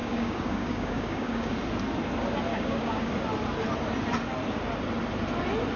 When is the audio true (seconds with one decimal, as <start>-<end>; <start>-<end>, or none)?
1.6-2.5; 3.1-5.8